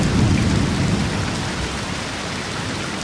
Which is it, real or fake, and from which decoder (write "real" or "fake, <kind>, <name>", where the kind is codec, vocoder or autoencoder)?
real